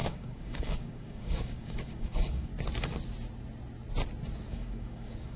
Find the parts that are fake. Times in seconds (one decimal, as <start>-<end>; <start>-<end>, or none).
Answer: 0.0-2.5; 4.5-5.4